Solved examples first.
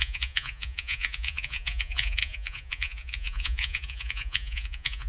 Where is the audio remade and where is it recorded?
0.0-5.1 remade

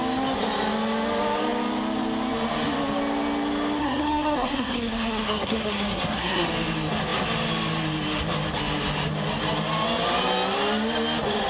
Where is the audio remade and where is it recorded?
0.0-3.8 recorded; 3.8-6.5 remade; 6.5-11.5 recorded

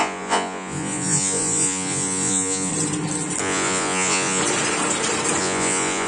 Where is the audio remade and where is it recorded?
0.0-2.7 remade; 2.7-3.4 recorded; 3.4-4.4 remade; 4.4-5.4 recorded; 5.4-6.1 remade

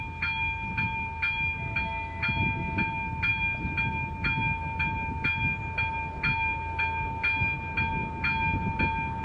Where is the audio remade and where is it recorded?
0.0-9.2 recorded

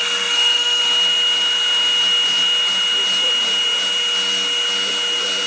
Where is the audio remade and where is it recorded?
0.0-0.8 remade; 0.8-5.5 recorded

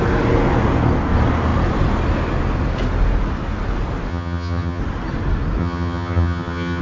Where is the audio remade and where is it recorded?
0.0-4.1 recorded; 4.1-4.8 remade; 4.8-5.6 recorded; 5.6-6.8 remade

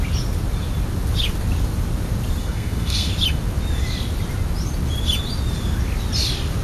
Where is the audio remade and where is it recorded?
0.0-2.4 recorded; 2.4-3.1 remade; 3.1-6.6 recorded